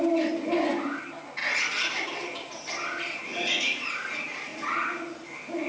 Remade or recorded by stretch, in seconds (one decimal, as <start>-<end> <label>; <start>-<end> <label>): 0.0-1.4 recorded; 1.4-3.2 remade; 3.2-5.7 recorded